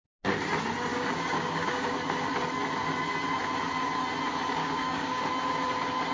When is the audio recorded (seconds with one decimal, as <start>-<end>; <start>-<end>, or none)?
0.0-0.9; 1.9-4.6; 5.2-6.1

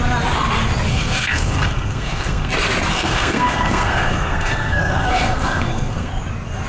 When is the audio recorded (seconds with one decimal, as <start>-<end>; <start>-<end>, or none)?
0.0-0.9; 2.5-2.9; 6.1-6.7

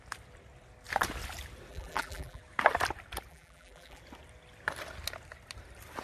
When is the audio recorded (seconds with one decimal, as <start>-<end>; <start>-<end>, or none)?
0.0-1.7; 2.4-3.3; 4.0-6.0